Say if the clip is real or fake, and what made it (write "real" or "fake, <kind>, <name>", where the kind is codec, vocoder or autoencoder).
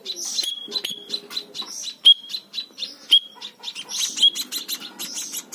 real